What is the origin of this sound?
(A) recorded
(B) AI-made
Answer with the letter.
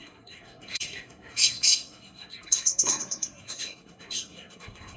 B